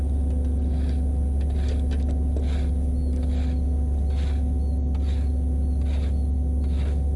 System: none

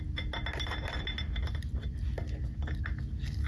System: none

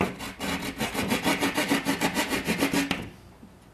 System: none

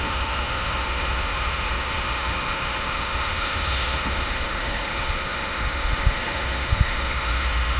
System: autoencoder, DAC-VAE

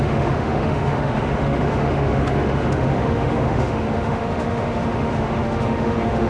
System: autoencoder, DAC-VAE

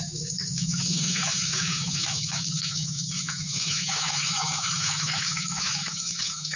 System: autoencoder, DAC-VAE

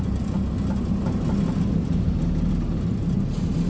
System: none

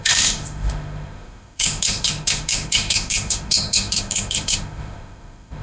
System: autoencoder, DAC-VAE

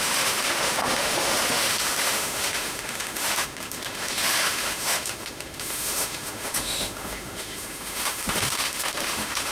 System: autoencoder, DAC-VAE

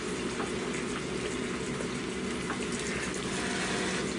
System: none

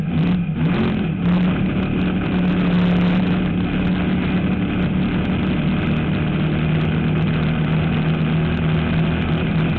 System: none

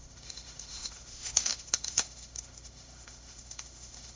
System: autoencoder, DAC-VAE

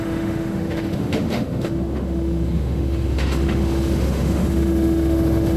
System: autoencoder, DAC-VAE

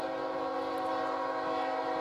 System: none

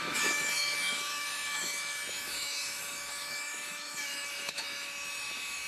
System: autoencoder, DAC-VAE